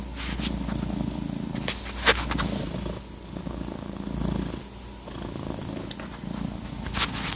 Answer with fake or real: real